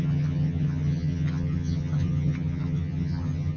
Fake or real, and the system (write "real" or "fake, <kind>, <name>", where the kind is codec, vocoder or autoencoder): fake, vocoder, HiFi-GAN